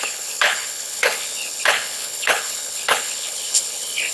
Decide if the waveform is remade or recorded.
remade